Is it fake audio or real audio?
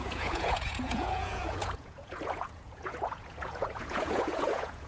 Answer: fake